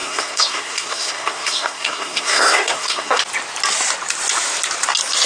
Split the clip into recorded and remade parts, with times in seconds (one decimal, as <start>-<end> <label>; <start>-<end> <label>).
0.0-3.2 remade; 3.2-5.3 recorded